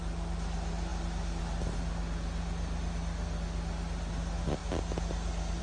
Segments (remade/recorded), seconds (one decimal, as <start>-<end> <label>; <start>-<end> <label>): 0.0-5.6 recorded